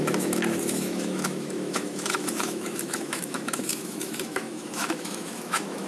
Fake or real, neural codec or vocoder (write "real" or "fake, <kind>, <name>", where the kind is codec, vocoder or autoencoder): fake, autoencoder, DAC-VAE